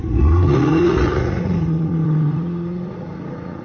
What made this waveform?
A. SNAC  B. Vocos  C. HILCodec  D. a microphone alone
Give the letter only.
B